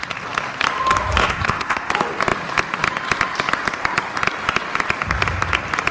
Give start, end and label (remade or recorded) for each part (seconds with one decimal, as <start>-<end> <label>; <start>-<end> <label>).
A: 0.0-1.2 recorded; 1.2-1.9 remade; 1.9-5.9 recorded